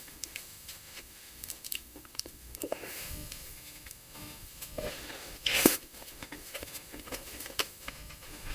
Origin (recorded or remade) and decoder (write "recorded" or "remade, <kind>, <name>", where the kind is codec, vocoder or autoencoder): remade, autoencoder, DAC-VAE